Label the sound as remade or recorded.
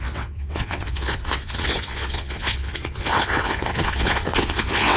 remade